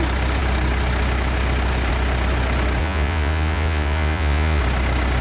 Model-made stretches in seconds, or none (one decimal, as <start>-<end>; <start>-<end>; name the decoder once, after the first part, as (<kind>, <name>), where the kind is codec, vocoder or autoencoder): 2.8-4.6 (vocoder, Vocos)